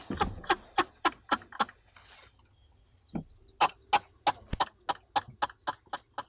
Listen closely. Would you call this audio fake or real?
real